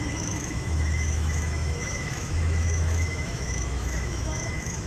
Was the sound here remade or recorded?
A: remade